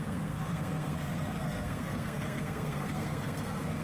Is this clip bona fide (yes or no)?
no